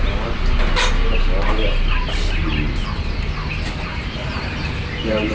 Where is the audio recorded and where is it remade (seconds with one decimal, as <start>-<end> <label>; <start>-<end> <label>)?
0.0-5.3 recorded